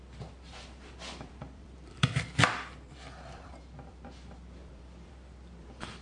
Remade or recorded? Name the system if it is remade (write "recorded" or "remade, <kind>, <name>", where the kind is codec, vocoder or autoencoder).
remade, vocoder, BigVGAN v2